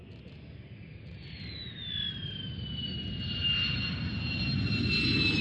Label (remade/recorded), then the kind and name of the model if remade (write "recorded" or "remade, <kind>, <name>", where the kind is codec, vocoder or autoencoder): recorded